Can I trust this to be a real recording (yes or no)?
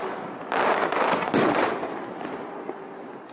yes